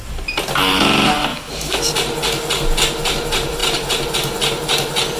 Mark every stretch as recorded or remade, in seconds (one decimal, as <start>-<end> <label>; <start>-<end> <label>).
0.0-1.3 recorded; 1.3-1.8 remade; 1.8-5.2 recorded